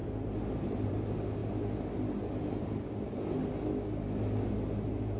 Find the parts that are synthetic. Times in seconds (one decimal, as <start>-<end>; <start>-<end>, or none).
0.0-0.9

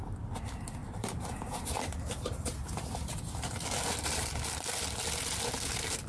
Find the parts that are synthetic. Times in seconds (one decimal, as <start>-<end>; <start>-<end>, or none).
0.8-3.6